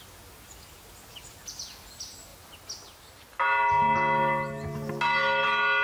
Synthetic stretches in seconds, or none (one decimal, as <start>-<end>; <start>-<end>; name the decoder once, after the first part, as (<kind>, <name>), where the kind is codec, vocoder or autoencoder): none